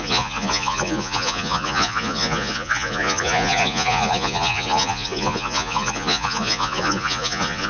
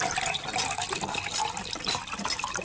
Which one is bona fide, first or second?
second